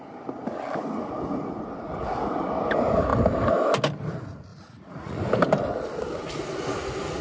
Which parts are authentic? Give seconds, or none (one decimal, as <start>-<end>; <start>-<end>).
0.0-4.5; 5.2-7.2